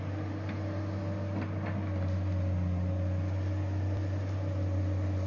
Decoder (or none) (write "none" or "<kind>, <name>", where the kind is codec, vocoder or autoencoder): none